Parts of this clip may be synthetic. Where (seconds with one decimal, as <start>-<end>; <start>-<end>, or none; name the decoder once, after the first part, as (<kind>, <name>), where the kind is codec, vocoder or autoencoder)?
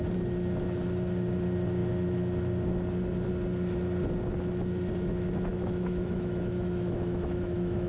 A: 5.5-7.9 (autoencoder, DAC-VAE)